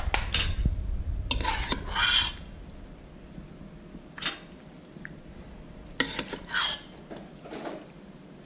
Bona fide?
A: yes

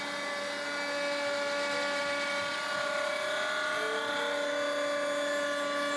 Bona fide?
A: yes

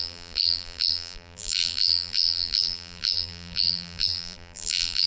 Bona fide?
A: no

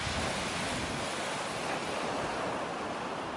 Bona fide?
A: yes